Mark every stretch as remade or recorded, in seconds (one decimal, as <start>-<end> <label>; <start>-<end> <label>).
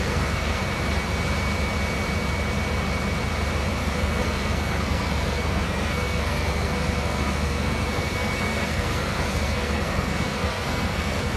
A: 0.0-0.6 remade; 0.6-3.8 recorded; 3.8-11.4 remade